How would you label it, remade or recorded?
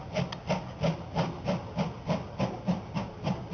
recorded